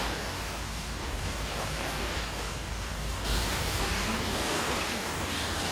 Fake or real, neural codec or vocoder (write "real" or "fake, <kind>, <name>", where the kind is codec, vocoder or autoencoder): fake, codec, DAC